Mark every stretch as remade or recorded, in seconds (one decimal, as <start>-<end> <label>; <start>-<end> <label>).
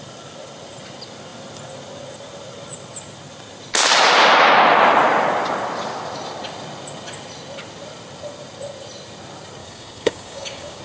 0.0-9.6 recorded; 9.6-10.8 remade